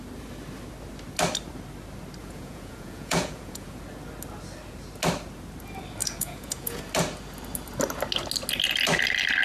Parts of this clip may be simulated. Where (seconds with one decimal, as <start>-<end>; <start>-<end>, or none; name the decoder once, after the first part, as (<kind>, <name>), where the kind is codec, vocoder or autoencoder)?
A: 2.2-3.8 (vocoder, Vocos); 6.0-6.8